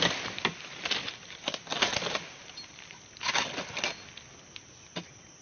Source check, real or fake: real